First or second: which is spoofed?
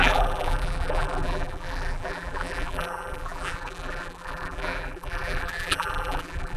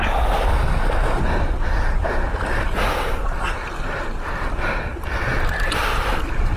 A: first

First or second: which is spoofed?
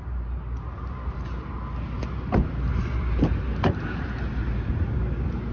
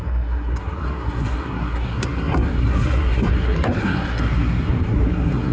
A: second